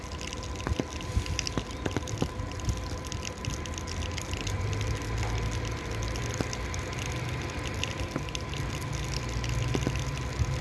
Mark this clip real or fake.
real